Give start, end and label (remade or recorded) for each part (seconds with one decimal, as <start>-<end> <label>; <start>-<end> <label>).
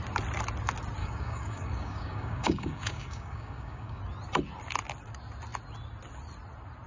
0.0-1.0 recorded; 1.0-4.0 remade; 4.0-6.9 recorded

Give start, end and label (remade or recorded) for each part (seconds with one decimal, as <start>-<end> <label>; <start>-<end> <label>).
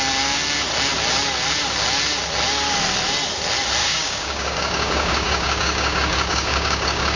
0.0-3.8 recorded; 3.8-7.2 remade